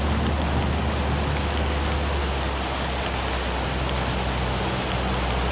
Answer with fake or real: real